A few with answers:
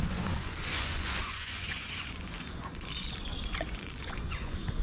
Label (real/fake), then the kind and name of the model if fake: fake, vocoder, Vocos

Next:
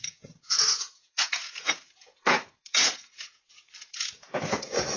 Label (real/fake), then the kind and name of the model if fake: fake, vocoder, Vocos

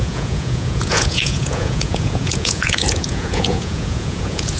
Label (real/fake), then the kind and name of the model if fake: fake, vocoder, Vocos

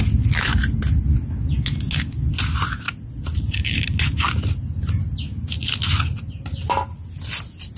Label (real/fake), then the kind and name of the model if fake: real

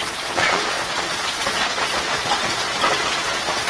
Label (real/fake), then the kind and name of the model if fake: fake, vocoder, Vocos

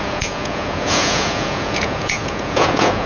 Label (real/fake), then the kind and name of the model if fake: fake, vocoder, Vocos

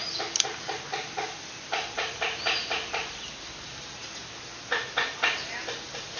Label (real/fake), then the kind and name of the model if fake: real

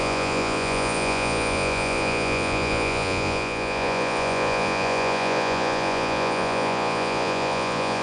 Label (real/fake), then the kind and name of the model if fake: fake, vocoder, Vocos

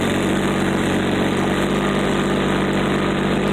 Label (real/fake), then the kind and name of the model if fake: real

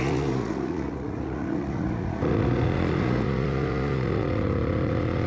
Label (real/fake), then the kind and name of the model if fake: fake, vocoder, Vocos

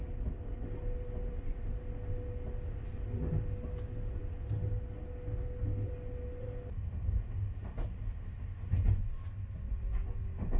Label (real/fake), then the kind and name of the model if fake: real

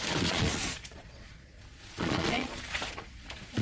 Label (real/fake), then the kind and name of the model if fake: fake, vocoder, Vocos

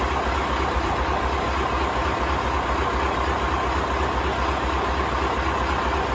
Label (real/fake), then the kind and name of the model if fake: real